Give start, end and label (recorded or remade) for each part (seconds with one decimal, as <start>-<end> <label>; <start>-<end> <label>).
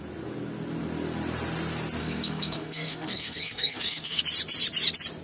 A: 0.0-2.0 recorded; 2.0-4.2 remade; 4.2-5.2 recorded